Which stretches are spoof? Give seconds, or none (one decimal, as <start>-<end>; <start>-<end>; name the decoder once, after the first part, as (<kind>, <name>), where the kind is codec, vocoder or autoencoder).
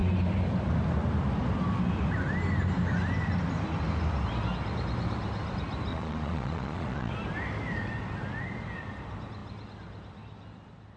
5.9-7.1 (vocoder, Vocos)